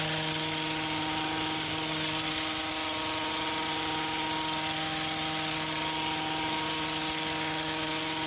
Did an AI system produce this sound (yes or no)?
no